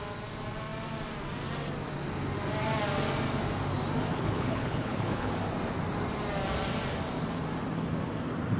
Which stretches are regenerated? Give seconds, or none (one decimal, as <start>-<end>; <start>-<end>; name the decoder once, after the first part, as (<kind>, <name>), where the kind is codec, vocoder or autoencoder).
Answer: 4.1-5.3 (codec, HILCodec)